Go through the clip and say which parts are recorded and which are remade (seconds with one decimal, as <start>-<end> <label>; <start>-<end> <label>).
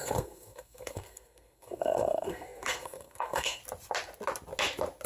0.0-3.6 remade; 3.6-5.1 recorded